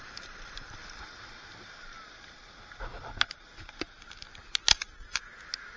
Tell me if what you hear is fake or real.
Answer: real